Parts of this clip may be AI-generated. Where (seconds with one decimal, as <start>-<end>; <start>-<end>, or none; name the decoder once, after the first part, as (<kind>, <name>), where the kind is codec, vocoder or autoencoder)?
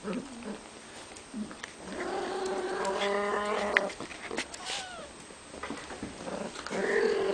none